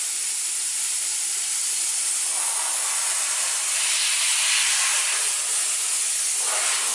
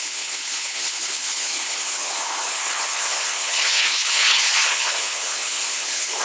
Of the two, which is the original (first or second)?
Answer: first